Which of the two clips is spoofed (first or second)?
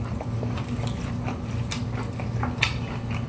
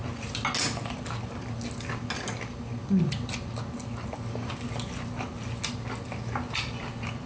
first